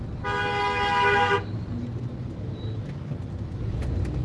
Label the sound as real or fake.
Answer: real